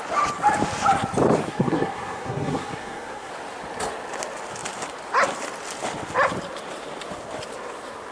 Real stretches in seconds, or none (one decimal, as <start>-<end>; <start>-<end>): 0.0-1.5; 3.3-8.1